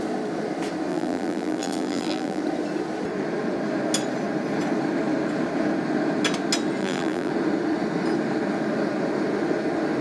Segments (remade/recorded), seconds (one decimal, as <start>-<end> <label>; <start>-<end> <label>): 0.0-0.9 recorded; 0.9-2.4 remade; 2.4-6.8 recorded; 6.8-7.3 remade; 7.3-10.0 recorded